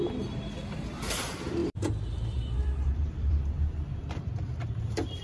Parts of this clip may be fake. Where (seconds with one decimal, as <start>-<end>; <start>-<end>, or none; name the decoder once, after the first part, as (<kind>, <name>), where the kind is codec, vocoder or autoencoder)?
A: 0.0-5.2 (vocoder, BigVGAN v2)